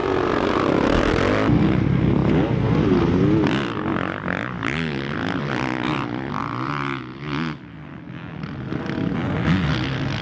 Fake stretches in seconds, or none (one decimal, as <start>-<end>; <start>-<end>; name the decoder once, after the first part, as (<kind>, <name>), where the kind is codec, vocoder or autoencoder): 0.0-1.2 (vocoder, BigVGAN v2); 6.4-7.0